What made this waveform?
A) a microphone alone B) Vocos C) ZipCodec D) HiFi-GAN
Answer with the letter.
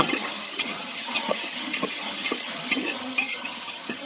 D